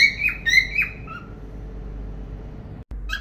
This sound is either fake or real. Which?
real